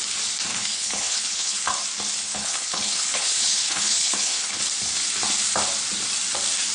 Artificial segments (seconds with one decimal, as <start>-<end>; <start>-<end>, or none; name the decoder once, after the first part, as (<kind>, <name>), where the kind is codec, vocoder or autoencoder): 0.5-1.7 (codec, HILCodec); 2.2-4.6